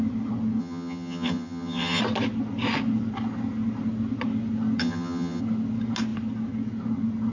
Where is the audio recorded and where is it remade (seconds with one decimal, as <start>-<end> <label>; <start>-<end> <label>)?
0.0-0.6 recorded; 0.6-2.0 remade; 2.0-4.8 recorded; 4.8-5.4 remade; 5.4-7.3 recorded